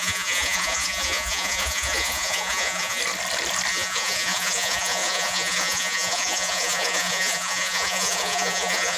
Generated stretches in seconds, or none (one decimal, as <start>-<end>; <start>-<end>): 0.0-3.0; 3.7-9.0